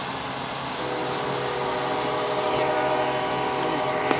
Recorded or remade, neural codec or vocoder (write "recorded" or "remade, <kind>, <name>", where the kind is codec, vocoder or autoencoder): recorded